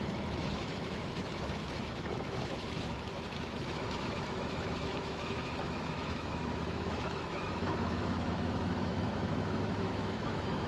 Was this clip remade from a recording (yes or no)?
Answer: yes